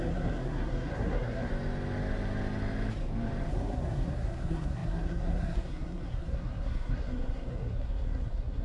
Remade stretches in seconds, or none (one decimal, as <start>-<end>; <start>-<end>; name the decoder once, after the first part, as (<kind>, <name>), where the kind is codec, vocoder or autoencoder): 0.0-1.5 (codec, SNAC); 3.5-8.6